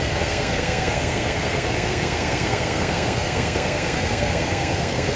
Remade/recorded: remade